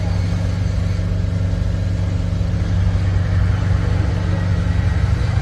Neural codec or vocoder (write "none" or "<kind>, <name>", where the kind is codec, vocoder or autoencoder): none